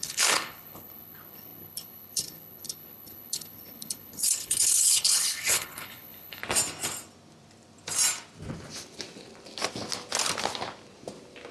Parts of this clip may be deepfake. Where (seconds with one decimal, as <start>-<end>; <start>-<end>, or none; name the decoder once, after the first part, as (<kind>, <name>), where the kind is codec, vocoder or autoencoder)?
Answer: 0.0-6.4 (codec, HILCodec)